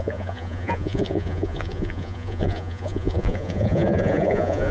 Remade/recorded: remade